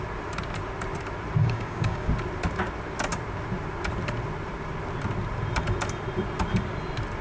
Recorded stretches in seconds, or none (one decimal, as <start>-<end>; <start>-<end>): 0.0-1.4; 2.1-7.2

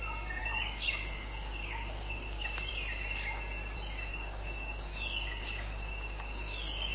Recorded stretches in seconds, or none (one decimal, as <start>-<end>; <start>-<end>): 0.0-0.4; 2.7-4.1

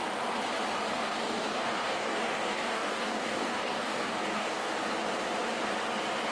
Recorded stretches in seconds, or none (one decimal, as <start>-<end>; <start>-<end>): 0.0-0.9; 4.7-6.3

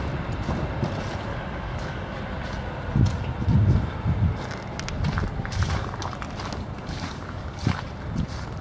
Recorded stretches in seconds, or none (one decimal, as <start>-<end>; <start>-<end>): 0.0-1.3; 2.2-6.8; 7.6-8.6